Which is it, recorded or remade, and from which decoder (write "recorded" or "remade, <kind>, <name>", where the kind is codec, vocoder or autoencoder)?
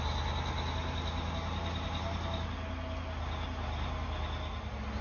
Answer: recorded